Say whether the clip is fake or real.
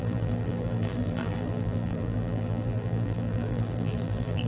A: fake